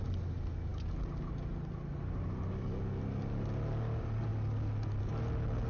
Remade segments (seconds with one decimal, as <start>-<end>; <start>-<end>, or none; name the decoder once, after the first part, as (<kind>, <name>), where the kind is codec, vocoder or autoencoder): none